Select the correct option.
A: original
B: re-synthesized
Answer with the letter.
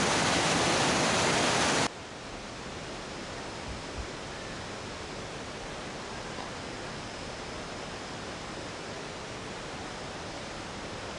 A